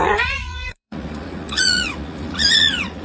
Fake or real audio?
fake